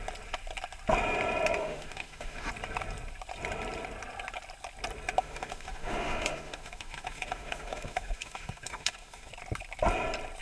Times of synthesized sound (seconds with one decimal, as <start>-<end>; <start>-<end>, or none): 1.6-2.5; 5.2-9.3